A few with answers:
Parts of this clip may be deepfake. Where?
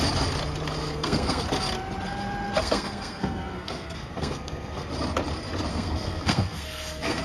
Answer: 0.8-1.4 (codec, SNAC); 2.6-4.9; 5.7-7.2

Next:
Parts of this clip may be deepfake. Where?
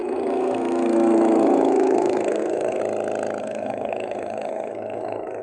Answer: 0.0-2.8 (codec, SNAC); 3.4-5.4